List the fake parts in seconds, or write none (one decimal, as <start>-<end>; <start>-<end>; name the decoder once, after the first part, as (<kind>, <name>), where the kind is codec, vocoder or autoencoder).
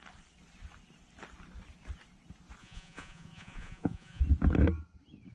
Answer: 2.6-4.2 (vocoder, Vocos)